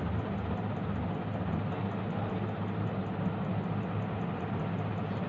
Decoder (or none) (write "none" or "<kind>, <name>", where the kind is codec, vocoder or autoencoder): none